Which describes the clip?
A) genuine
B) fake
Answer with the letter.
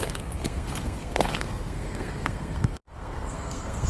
B